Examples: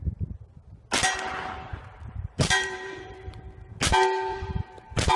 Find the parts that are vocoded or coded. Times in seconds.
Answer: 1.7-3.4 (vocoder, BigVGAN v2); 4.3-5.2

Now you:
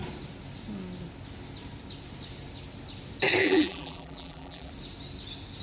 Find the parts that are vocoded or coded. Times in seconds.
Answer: 3.4-4.7 (vocoder, BigVGAN v2)

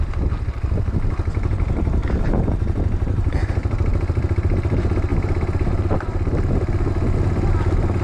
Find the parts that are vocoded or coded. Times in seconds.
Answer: 2.0-3.5 (vocoder, BigVGAN v2); 5.1-6.9

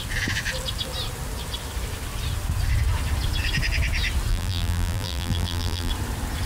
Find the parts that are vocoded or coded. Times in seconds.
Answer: 4.3-5.9 (vocoder, BigVGAN v2)

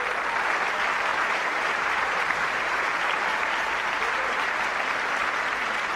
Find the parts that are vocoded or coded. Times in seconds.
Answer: 1.1-4.5 (vocoder, BigVGAN v2)

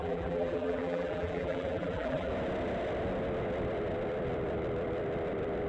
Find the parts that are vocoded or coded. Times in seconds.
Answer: 0.0-2.3 (vocoder, BigVGAN v2)

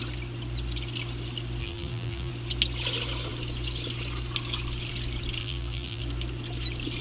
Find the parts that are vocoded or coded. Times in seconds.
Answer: 1.6-2.3 (vocoder, BigVGAN v2); 5.4-6.0